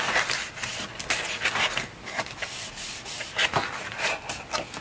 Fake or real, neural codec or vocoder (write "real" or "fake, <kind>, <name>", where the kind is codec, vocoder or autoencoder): real